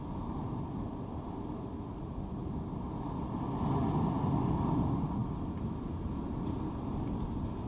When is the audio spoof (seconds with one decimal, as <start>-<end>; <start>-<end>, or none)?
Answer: none